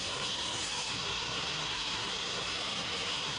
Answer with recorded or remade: remade